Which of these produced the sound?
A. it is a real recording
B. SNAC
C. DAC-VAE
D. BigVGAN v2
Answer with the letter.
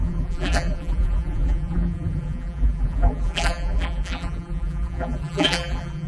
D